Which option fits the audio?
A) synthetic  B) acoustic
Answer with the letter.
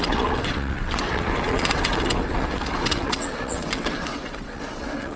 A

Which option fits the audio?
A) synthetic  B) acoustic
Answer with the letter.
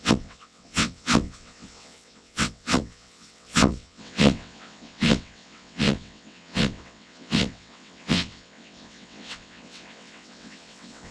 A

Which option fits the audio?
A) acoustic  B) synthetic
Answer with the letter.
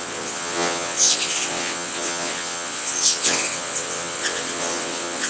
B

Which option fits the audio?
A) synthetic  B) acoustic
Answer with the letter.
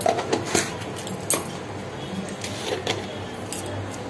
B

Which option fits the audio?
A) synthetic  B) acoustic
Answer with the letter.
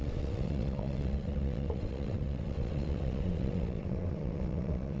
A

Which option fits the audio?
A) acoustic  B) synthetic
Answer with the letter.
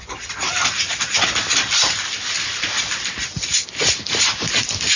A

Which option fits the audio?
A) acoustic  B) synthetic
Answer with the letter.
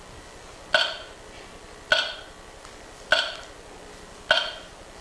A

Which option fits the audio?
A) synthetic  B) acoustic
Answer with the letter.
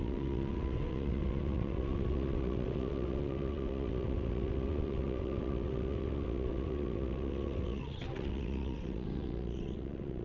A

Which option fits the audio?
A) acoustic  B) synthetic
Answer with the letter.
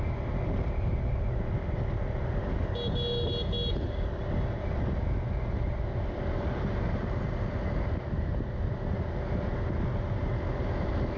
A